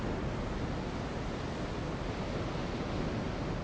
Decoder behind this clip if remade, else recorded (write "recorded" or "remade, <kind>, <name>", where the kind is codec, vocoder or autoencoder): recorded